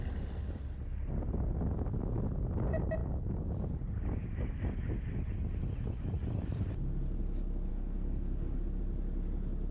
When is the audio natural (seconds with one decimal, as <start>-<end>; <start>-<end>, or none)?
0.0-7.7; 8.8-9.7

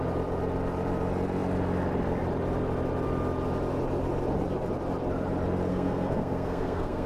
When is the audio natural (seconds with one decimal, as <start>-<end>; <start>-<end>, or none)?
0.0-5.7

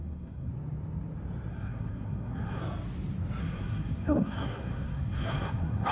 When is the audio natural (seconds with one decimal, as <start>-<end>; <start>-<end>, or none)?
0.5-1.5; 2.6-3.4

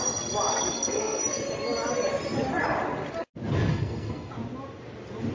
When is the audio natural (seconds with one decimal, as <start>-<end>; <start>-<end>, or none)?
0.0-0.5; 1.2-3.7; 4.3-5.3

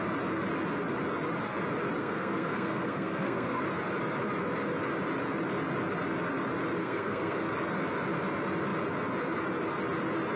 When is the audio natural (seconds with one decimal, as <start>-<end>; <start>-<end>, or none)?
0.0-2.0; 3.6-6.8; 7.4-10.4

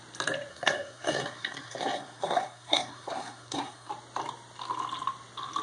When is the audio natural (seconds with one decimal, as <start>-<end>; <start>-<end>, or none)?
0.0-0.5; 3.9-5.6

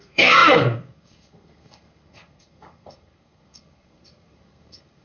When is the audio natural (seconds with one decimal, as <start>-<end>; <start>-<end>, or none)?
none

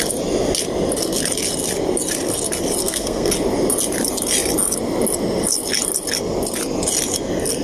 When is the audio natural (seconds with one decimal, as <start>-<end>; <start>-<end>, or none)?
0.0-2.8; 3.3-7.6